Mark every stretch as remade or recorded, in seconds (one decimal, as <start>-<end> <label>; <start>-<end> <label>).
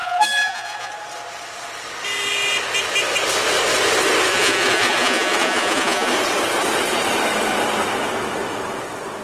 0.0-0.9 remade; 0.9-4.3 recorded; 4.3-6.1 remade; 6.1-9.2 recorded